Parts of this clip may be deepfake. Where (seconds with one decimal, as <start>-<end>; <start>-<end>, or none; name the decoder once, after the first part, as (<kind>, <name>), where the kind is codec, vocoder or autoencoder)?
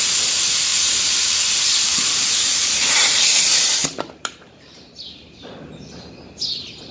0.7-3.4 (vocoder, BigVGAN v2); 3.8-5.1